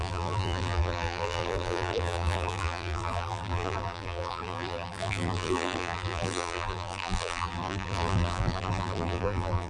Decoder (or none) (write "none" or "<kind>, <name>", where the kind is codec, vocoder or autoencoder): vocoder, BigVGAN v2